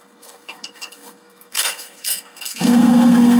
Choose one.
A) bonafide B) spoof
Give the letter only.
B